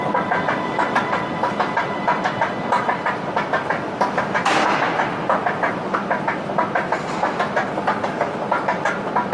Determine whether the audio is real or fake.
real